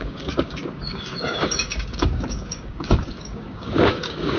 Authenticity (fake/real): fake